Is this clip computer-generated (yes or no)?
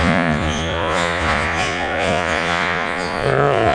yes